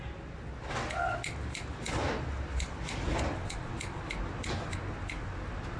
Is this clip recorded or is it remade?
recorded